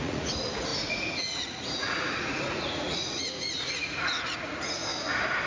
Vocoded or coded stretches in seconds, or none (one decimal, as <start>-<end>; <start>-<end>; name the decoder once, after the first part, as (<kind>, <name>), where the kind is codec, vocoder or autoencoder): 0.0-4.8 (vocoder, Vocos)